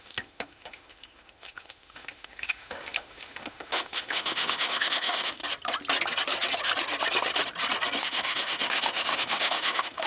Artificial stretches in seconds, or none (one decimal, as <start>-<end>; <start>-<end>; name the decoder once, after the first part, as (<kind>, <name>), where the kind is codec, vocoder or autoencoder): 0.0-5.4 (autoencoder, DAC-VAE); 8.0-10.1